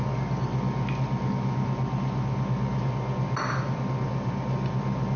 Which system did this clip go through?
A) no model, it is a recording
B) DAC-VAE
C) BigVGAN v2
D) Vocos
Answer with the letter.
A